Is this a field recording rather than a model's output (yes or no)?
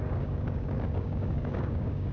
no